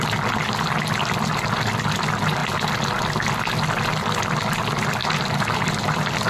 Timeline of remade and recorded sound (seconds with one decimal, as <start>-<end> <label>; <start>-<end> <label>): 0.0-5.0 recorded; 5.0-6.3 remade